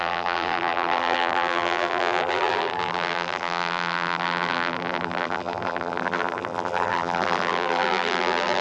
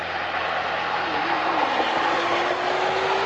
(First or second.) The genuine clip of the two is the second